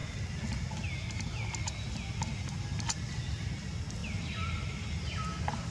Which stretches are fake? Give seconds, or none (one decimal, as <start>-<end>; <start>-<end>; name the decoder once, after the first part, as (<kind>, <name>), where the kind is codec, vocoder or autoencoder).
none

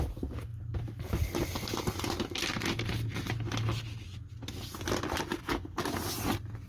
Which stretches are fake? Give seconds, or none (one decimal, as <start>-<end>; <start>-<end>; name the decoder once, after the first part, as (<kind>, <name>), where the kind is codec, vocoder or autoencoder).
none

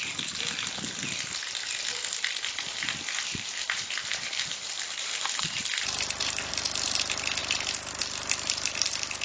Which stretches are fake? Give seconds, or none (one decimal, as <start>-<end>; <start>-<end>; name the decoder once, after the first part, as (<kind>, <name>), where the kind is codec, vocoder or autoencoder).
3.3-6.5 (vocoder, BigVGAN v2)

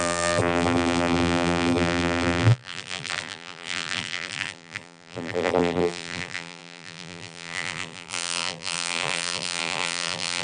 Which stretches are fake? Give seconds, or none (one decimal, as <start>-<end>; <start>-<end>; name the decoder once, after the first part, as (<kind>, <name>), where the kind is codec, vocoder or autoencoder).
0.0-10.4 (vocoder, BigVGAN v2)

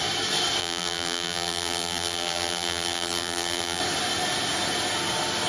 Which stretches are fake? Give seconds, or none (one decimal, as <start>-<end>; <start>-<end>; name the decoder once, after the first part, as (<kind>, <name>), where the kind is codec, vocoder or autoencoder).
0.6-3.8 (vocoder, BigVGAN v2)